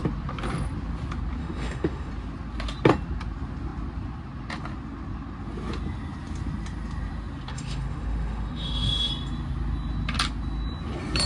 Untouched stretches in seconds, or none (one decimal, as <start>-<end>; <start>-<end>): 0.0-1.4; 2.1-7.5; 9.1-11.3